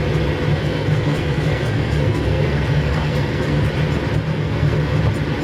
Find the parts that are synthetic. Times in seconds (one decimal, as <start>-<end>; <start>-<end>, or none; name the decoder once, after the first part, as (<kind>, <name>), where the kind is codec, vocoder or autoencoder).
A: 0.5-3.7 (codec, SNAC); 4.3-5.0